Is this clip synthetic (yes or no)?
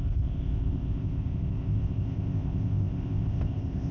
yes